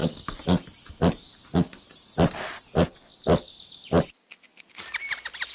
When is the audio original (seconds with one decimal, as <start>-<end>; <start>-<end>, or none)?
0.0-5.5